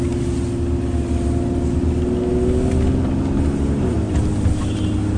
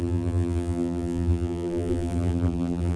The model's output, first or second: second